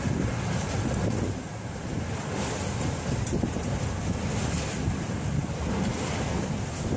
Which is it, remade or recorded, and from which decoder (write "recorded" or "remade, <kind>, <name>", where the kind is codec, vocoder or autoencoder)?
recorded